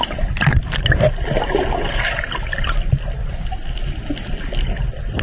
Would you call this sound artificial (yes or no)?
no